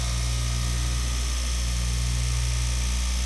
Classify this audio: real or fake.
real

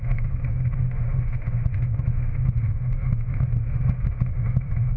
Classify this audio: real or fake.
fake